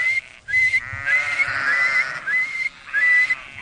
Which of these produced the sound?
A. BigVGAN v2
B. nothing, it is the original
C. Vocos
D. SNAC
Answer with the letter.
B